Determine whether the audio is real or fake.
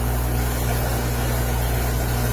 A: real